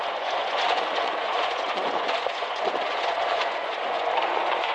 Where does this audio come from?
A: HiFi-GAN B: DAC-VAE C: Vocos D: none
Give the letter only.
C